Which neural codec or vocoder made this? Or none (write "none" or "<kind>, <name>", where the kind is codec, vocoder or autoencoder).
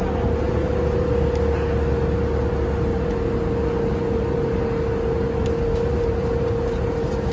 none